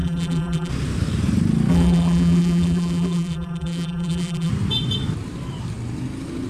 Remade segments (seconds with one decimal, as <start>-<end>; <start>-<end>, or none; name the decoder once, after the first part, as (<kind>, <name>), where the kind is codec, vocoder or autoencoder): 0.0-0.7 (vocoder, BigVGAN v2); 1.7-4.5

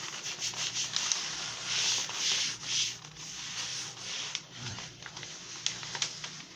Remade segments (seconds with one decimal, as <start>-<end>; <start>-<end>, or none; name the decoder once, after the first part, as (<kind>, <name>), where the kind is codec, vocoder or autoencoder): 3.7-5.4 (vocoder, BigVGAN v2)

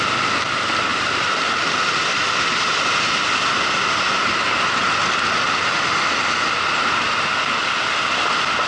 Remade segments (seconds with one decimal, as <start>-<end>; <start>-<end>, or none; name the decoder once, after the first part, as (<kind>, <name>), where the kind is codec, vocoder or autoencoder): 0.9-2.5 (vocoder, BigVGAN v2)

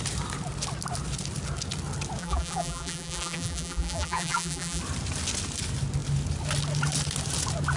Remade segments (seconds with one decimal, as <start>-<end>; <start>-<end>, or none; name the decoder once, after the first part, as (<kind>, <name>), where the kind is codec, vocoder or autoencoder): 2.2-4.8 (vocoder, BigVGAN v2)

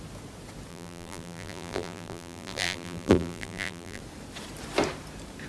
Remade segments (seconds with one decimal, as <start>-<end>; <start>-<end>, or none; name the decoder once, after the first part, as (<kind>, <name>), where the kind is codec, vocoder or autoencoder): 0.7-4.0 (vocoder, BigVGAN v2)